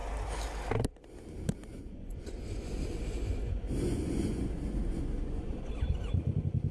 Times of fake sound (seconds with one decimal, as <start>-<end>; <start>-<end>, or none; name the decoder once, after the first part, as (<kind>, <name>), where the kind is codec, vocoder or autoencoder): 1.7-5.7 (vocoder, Vocos)